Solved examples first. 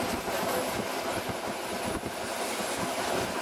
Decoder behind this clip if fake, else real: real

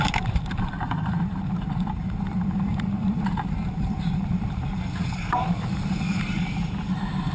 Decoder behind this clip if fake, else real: fake, vocoder, BigVGAN v2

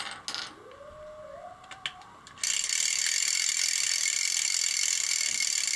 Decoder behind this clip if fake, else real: real